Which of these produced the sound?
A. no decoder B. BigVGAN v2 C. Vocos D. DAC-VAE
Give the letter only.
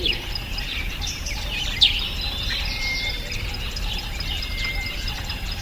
B